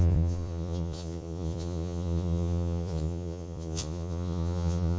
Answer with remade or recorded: remade